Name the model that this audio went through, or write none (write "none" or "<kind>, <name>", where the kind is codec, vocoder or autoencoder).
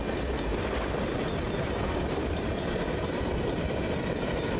none